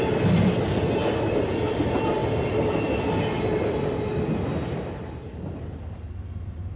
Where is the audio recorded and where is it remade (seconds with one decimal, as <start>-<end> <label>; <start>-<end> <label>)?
0.0-6.8 recorded